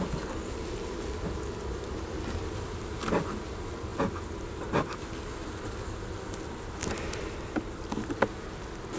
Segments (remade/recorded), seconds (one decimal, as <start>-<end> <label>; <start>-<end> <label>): 0.0-9.0 recorded